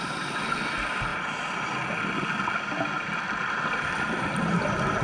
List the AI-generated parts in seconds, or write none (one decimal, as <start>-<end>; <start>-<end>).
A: none